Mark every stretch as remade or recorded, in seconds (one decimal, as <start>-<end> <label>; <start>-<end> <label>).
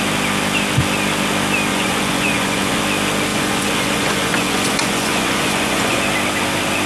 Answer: 0.0-1.7 recorded; 1.7-2.8 remade; 2.8-3.3 recorded; 3.3-6.0 remade; 6.0-6.9 recorded